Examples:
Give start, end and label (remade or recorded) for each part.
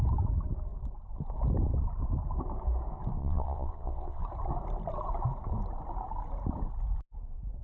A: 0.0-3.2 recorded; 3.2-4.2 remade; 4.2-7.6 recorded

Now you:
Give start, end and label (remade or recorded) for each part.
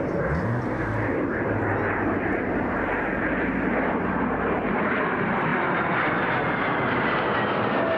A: 0.0-8.0 recorded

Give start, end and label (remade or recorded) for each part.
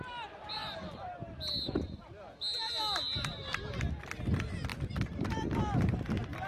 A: 0.0-4.7 recorded; 4.7-5.6 remade; 5.6-6.5 recorded